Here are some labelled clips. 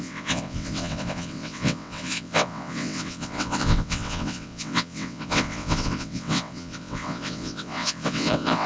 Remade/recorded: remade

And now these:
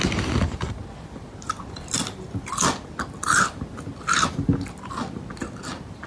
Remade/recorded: recorded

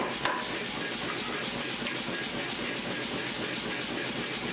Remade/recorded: recorded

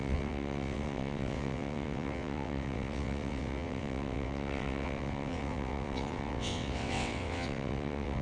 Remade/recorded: remade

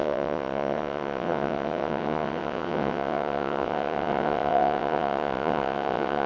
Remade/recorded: remade